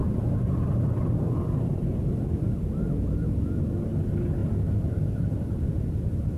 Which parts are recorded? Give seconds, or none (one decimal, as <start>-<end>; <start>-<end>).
1.6-4.4